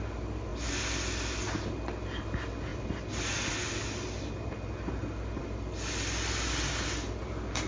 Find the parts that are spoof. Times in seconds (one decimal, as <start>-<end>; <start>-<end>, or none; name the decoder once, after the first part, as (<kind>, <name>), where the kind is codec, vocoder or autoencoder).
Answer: none